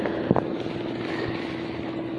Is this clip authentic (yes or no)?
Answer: yes